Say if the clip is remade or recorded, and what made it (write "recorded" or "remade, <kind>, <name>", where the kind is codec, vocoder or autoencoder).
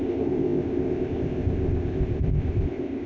remade, codec, ZipCodec